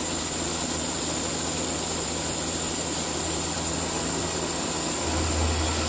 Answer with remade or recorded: recorded